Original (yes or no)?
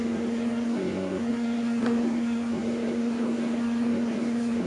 no